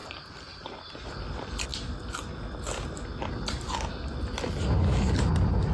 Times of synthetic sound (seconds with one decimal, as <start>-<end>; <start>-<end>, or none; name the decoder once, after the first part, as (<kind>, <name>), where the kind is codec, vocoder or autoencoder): 0.0-1.1 (vocoder, BigVGAN v2)